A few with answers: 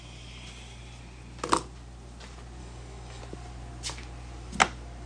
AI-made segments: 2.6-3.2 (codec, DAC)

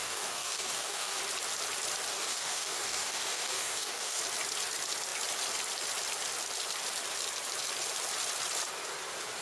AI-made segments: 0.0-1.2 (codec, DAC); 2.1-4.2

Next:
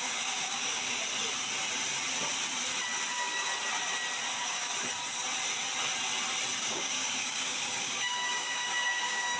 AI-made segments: 0.0-1.0 (codec, DAC); 3.1-3.5; 4.3-4.7; 6.6-9.4